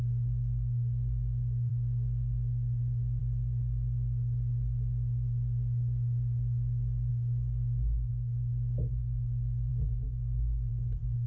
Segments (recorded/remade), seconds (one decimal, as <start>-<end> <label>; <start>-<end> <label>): 0.0-7.1 recorded; 7.1-8.1 remade; 8.1-9.7 recorded; 9.7-10.7 remade; 10.7-11.3 recorded